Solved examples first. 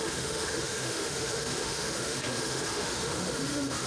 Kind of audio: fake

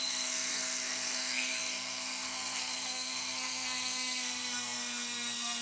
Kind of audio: fake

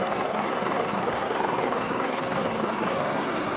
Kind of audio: fake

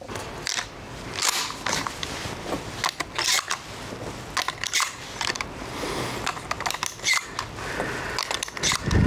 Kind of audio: real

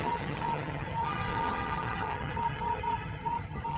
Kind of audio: fake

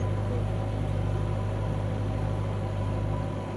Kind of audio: real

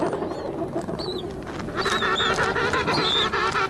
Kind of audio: real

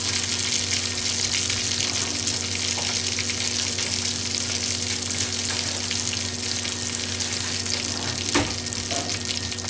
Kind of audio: real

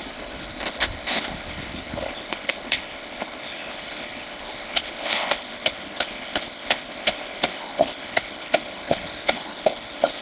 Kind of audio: fake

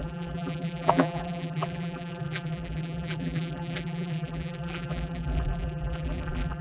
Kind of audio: fake